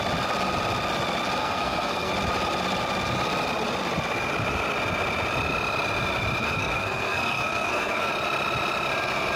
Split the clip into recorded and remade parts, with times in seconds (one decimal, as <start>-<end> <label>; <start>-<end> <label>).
0.0-1.4 recorded; 1.4-2.1 remade; 2.1-6.4 recorded; 6.4-8.1 remade; 8.1-9.4 recorded